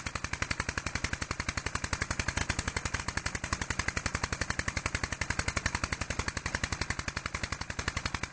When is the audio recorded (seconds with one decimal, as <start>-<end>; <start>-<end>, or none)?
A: 0.0-8.3